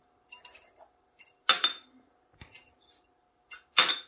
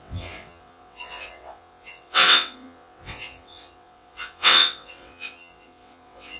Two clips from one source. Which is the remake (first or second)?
second